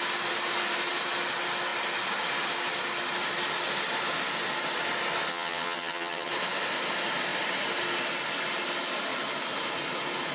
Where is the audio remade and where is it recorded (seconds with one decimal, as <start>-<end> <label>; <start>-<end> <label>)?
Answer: 0.0-5.3 recorded; 5.3-6.3 remade; 6.3-10.3 recorded